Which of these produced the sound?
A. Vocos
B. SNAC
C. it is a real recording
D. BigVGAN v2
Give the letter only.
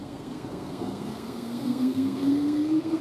B